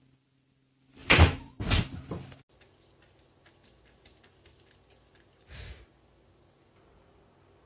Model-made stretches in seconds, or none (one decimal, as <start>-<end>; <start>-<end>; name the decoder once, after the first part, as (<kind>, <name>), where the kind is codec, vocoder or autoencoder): 1.0-1.8 (vocoder, BigVGAN v2)